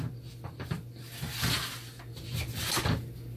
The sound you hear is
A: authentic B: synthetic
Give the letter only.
A